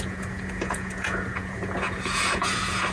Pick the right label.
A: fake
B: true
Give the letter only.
A